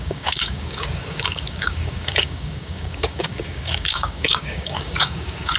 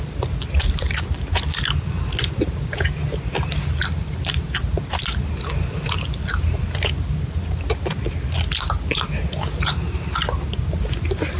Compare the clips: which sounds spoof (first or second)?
first